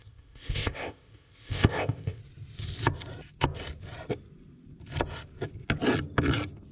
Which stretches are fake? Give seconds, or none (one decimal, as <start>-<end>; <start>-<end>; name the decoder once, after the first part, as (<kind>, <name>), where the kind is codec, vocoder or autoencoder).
0.0-2.2 (codec, ZipCodec)

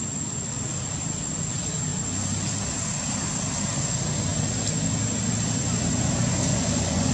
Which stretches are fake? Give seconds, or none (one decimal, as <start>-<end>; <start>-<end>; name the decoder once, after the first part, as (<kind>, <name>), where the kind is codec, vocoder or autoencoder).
6.5-7.1 (vocoder, Vocos)

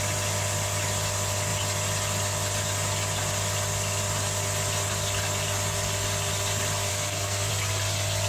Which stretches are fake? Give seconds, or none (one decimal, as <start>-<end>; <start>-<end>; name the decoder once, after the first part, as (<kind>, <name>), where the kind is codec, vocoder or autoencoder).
6.9-7.5 (codec, SNAC)

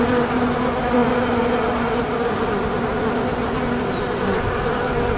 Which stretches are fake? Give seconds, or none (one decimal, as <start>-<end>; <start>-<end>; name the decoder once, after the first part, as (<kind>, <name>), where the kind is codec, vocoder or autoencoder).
none

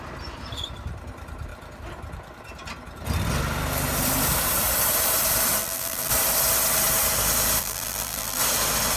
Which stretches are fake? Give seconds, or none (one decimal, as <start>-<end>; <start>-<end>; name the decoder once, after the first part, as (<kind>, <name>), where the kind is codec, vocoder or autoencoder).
5.6-6.1 (vocoder, BigVGAN v2); 7.6-8.4

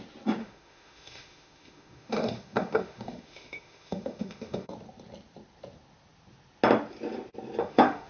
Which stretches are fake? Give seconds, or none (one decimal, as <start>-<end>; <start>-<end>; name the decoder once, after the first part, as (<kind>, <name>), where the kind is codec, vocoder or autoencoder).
0.4-4.7 (autoencoder, DAC-VAE); 7.6-8.1

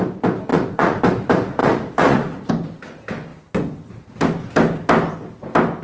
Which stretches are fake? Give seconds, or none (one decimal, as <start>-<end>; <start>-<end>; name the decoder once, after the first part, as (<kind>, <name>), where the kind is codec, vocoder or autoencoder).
0.5-1.0 (vocoder, Vocos); 1.6-2.5